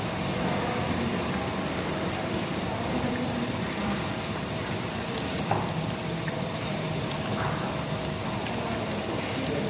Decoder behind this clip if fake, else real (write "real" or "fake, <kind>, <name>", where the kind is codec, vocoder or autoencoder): fake, vocoder, BigVGAN v2